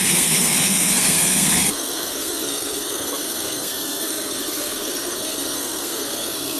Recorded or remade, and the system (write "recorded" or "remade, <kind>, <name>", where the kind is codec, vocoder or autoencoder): remade, codec, SNAC